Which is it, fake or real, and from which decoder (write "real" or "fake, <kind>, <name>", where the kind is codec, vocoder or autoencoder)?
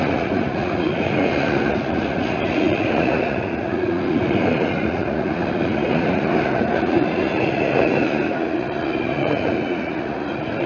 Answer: fake, vocoder, Vocos